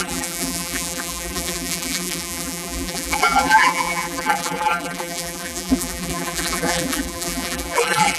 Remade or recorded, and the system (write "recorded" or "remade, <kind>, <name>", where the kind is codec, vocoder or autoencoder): remade, vocoder, BigVGAN v2